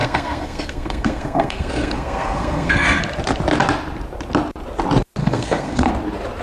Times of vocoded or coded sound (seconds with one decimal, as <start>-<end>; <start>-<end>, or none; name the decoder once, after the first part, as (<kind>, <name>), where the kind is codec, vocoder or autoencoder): 0.0-3.0 (codec, SNAC); 5.2-5.9